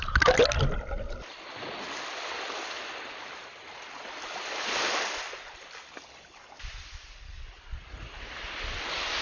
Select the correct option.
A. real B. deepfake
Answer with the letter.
A